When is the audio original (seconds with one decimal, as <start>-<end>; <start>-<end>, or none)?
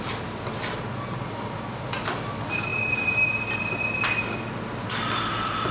0.0-5.7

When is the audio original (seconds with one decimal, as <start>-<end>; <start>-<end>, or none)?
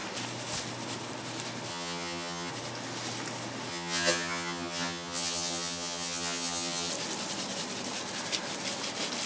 0.0-1.7; 2.5-3.7; 6.9-9.3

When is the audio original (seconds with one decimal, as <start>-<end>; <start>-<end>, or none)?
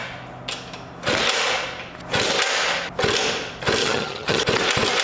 0.0-3.8; 4.4-5.0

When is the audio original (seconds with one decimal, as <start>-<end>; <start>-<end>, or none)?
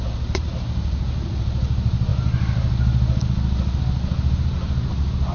0.0-5.3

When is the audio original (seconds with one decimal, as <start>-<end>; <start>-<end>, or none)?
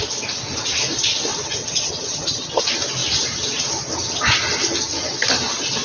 0.0-1.6; 2.6-5.8